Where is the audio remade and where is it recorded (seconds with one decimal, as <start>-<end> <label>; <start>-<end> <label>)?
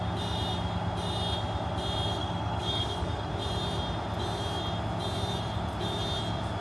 0.0-2.2 recorded; 2.2-3.3 remade; 3.3-6.6 recorded